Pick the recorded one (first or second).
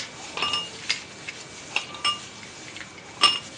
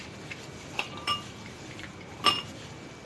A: first